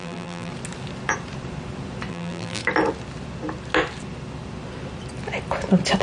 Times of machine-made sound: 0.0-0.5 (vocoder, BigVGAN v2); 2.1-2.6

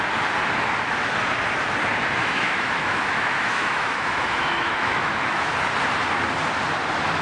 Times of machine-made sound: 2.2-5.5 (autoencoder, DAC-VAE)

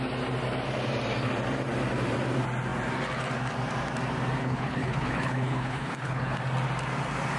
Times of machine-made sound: 4.4-6.4 (codec, HILCodec)

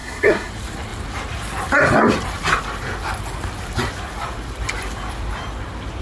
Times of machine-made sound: 0.0-0.5 (codec, SNAC)

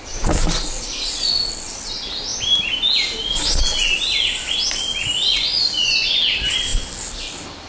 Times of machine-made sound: 5.3-6.2 (vocoder, Vocos)

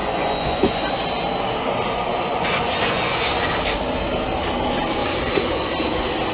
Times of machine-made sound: 0.0-0.9 (vocoder, Vocos); 2.1-3.5; 5.0-5.7